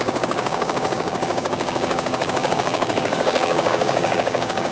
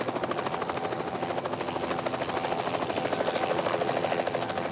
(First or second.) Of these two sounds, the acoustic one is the second